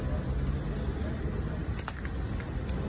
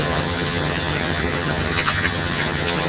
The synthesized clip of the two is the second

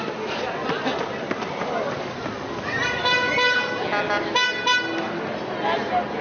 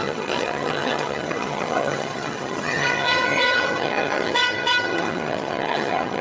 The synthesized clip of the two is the second